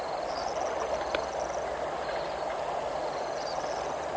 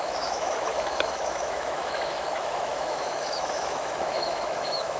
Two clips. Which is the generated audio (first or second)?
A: second